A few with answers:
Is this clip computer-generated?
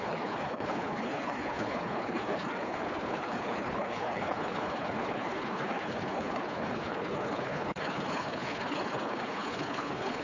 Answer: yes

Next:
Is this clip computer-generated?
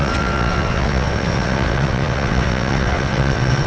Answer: yes